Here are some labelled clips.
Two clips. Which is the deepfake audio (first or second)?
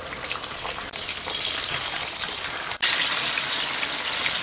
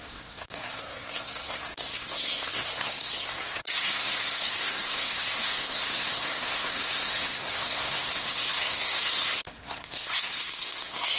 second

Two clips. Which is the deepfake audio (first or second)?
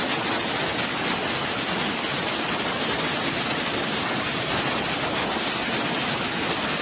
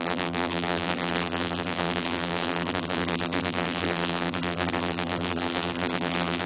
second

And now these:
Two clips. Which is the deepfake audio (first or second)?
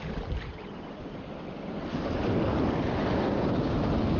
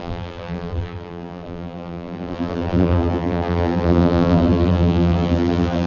second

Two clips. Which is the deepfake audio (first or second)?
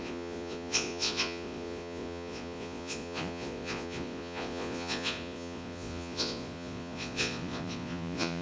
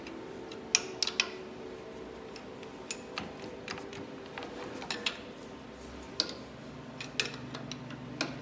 first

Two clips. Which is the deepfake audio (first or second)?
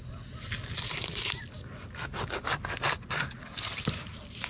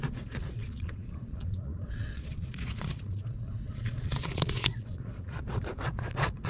second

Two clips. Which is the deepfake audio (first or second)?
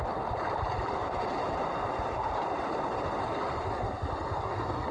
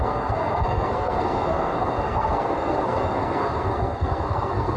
second